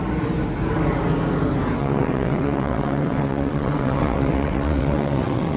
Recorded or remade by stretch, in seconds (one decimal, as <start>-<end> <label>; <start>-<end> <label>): 0.0-1.8 recorded; 1.8-5.6 remade